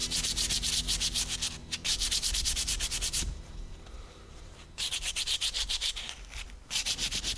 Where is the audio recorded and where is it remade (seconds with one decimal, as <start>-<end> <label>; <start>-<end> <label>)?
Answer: 0.0-1.6 recorded; 1.6-6.0 remade; 6.0-7.4 recorded